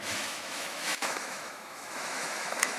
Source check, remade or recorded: remade